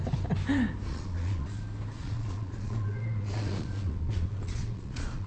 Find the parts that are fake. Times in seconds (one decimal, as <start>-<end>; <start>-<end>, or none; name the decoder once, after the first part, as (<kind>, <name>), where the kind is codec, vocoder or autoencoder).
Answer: 0.9-1.6 (vocoder, Vocos); 2.0-5.3